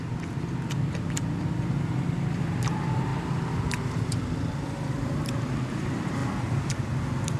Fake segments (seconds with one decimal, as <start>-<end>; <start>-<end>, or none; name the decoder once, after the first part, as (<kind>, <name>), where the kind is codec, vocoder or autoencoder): 0.0-7.4 (vocoder, BigVGAN v2)